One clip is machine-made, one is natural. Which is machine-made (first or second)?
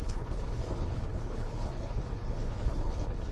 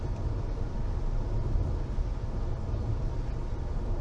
first